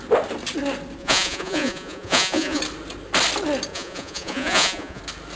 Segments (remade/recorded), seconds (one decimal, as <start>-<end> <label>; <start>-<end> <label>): 0.0-1.0 recorded; 1.0-2.6 remade; 2.6-3.7 recorded; 3.7-5.0 remade; 5.0-5.4 recorded